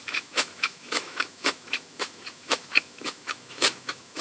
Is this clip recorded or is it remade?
remade